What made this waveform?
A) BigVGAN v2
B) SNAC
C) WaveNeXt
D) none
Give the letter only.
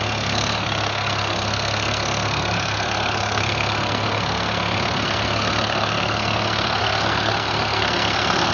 B